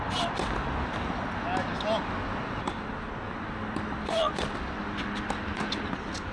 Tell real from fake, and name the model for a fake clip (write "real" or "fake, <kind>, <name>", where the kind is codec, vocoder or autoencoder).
real